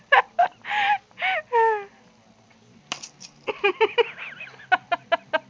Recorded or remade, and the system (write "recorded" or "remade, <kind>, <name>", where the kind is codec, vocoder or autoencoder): recorded